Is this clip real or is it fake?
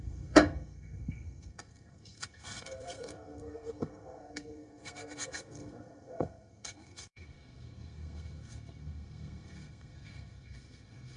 fake